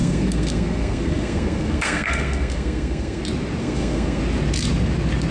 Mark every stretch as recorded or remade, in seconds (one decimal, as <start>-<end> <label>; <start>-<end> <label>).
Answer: 0.0-3.2 remade; 3.2-3.6 recorded; 3.6-4.2 remade; 4.2-5.3 recorded